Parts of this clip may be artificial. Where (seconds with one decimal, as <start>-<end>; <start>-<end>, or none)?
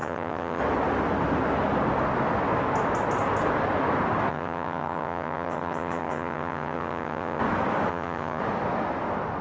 0.0-0.6; 4.3-7.4; 7.9-8.4